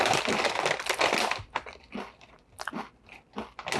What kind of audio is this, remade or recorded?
recorded